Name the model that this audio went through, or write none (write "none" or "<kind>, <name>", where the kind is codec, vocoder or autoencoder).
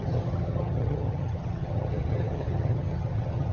vocoder, HiFi-GAN